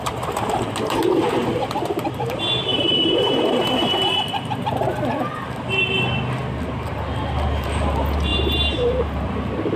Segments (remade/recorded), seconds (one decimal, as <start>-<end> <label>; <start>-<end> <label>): 0.0-2.7 recorded; 2.7-4.1 remade; 4.1-8.3 recorded; 8.3-9.3 remade; 9.3-9.8 recorded